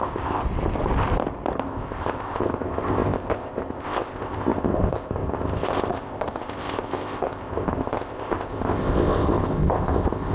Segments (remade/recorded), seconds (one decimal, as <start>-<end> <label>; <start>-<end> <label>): 0.0-0.4 remade; 0.4-1.6 recorded; 1.6-10.3 remade

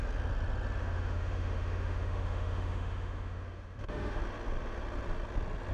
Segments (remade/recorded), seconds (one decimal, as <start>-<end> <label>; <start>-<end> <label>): 0.0-0.8 recorded; 0.8-4.2 remade; 4.2-5.7 recorded

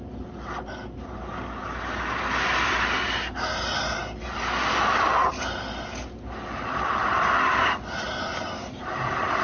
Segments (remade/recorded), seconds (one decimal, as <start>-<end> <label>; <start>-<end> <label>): 0.0-9.4 recorded

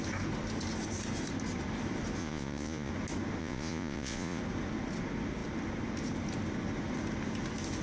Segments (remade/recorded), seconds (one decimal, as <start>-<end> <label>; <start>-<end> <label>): 0.0-2.2 recorded; 2.2-2.9 remade; 2.9-3.4 recorded; 3.4-4.4 remade; 4.4-7.8 recorded

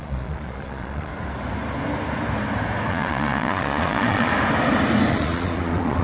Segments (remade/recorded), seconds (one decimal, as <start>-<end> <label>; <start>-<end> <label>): 0.0-1.1 remade; 1.1-2.9 recorded; 2.9-4.3 remade; 4.3-5.1 recorded; 5.1-6.0 remade

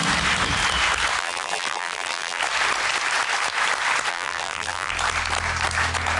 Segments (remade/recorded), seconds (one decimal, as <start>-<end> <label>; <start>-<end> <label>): 0.0-1.2 recorded; 1.2-2.4 remade; 2.4-4.1 recorded; 4.1-4.9 remade; 4.9-6.2 recorded